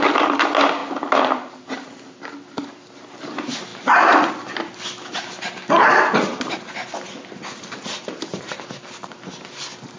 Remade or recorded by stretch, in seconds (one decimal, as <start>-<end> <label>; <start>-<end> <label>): 0.0-0.8 recorded; 0.8-1.5 remade; 1.5-3.7 recorded; 3.7-4.3 remade; 4.3-10.0 recorded